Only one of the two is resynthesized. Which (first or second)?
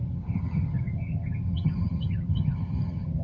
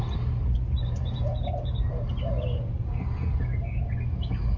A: first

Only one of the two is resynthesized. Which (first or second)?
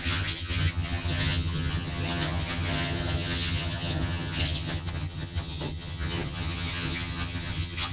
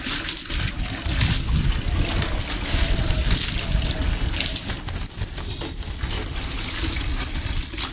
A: first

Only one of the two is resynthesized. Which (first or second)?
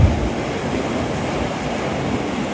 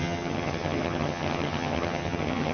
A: second